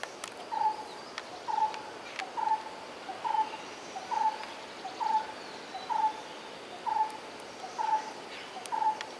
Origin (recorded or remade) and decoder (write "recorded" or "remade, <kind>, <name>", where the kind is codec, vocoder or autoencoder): recorded